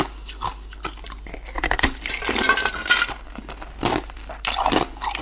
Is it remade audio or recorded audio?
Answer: recorded